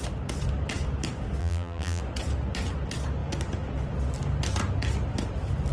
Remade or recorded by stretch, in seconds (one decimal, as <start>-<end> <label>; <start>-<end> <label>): 0.0-1.4 recorded; 1.4-2.0 remade; 2.0-5.7 recorded